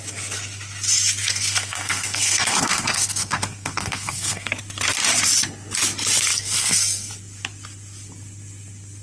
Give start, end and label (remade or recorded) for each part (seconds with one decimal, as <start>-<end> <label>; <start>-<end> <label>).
0.0-1.2 recorded; 1.2-4.5 remade; 4.5-6.3 recorded; 6.3-7.1 remade; 7.1-9.0 recorded